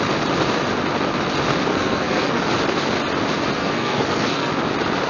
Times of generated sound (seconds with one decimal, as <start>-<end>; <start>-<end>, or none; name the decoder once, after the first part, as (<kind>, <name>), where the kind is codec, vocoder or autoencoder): 1.7-2.4 (codec, SNAC); 3.6-4.5